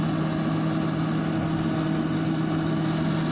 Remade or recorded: recorded